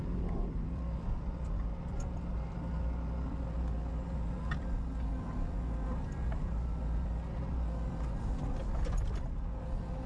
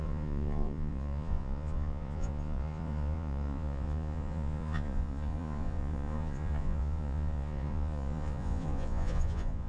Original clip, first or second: first